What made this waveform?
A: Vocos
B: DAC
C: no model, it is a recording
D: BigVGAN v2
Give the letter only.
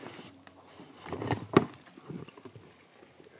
C